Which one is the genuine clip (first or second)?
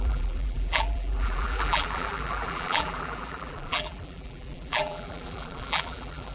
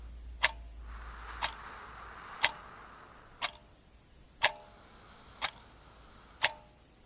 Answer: second